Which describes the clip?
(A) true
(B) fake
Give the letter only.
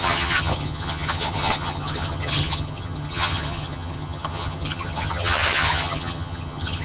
B